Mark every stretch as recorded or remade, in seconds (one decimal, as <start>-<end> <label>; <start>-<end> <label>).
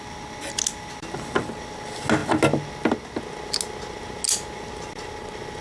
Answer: 0.0-5.6 recorded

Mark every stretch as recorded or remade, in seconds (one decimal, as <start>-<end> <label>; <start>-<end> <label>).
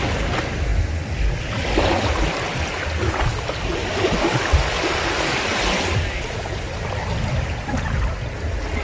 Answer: 0.0-8.8 recorded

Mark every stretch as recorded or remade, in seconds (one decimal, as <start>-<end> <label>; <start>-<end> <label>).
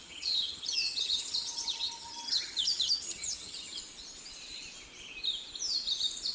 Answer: 0.0-3.8 remade; 3.8-6.3 recorded